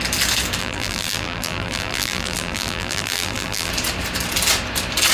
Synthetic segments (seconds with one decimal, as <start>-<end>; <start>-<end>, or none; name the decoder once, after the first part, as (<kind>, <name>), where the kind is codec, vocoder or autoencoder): 0.6-3.7 (vocoder, BigVGAN v2)